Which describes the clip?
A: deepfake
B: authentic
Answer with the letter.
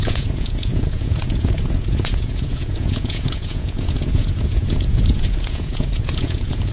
A